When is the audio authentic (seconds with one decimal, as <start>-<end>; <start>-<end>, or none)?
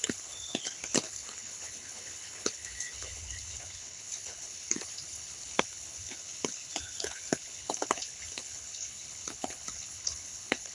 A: none